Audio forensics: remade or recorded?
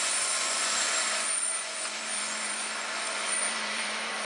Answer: remade